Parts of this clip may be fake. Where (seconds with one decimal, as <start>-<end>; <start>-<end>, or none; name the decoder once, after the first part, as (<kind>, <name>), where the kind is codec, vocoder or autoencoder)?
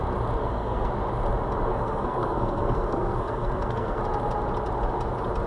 0.4-0.9 (codec, SNAC); 1.7-4.0